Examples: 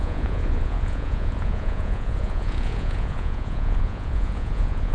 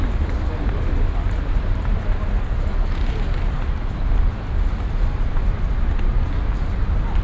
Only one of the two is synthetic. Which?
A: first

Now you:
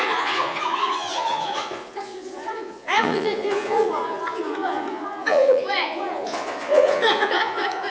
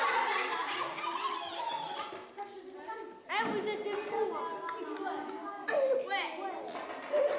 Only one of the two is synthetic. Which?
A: first